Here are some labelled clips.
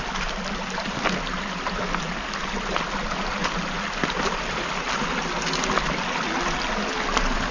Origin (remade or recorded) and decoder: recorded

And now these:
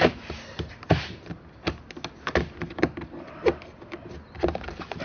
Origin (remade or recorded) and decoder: recorded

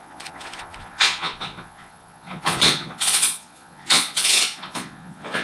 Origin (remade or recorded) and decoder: remade, vocoder, Vocos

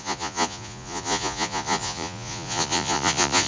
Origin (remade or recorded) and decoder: remade, vocoder, Vocos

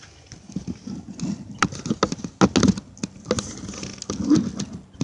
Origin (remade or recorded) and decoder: recorded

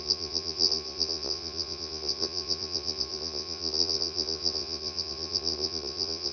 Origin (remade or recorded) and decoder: remade, vocoder, Vocos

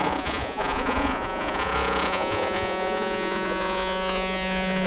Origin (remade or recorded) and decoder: remade, vocoder, Vocos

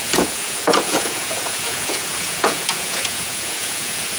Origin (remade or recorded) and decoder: remade, vocoder, Vocos